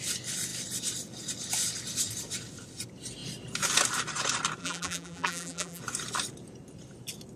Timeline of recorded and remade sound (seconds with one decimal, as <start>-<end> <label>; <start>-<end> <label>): 0.0-4.6 recorded; 4.6-5.8 remade; 5.8-7.4 recorded